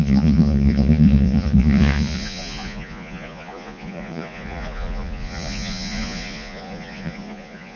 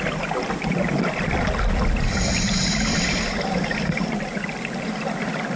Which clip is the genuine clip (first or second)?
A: second